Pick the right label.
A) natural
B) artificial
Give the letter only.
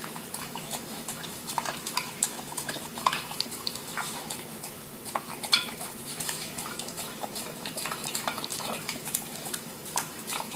B